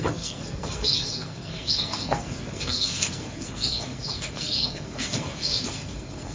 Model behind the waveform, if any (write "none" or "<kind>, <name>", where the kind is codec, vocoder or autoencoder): codec, SNAC